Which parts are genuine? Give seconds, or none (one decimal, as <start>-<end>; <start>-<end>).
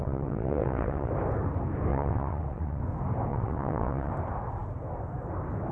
1.1-1.9; 2.8-3.3; 4.1-5.7